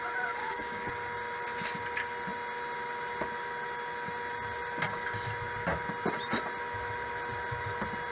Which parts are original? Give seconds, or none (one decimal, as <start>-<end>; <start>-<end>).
0.0-0.4; 0.9-8.1